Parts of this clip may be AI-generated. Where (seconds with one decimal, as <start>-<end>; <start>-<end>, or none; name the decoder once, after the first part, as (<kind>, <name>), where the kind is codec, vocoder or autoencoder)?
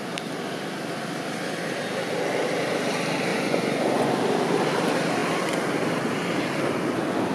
3.3-4.1 (vocoder, Vocos)